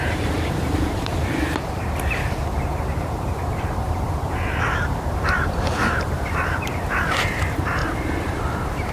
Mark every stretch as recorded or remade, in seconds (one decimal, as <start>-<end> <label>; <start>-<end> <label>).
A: 0.0-8.9 remade